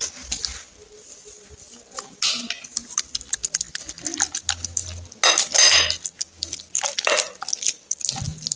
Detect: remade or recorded recorded